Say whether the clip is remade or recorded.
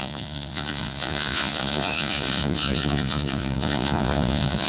remade